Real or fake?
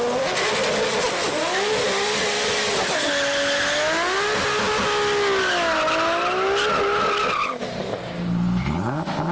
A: real